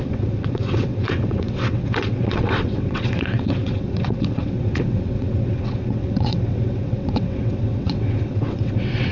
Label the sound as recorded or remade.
remade